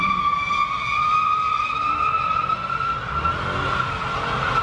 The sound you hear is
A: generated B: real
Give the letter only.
B